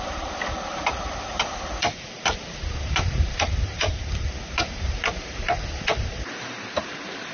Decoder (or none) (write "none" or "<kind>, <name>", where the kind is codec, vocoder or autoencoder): vocoder, BigVGAN v2